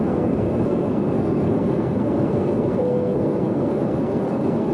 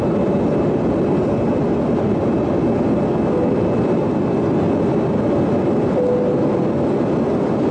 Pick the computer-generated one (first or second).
first